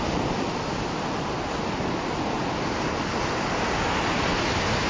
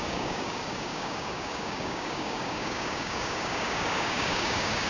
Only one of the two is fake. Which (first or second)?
second